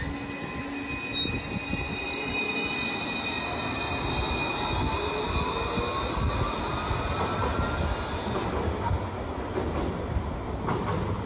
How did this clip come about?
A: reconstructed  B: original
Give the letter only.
B